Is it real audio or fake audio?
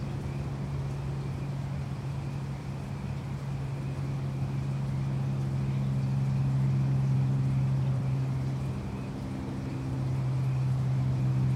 fake